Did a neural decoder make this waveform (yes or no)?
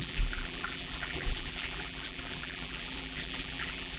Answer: yes